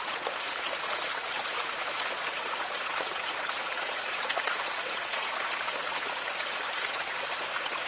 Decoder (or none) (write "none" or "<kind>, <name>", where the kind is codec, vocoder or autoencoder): vocoder, Vocos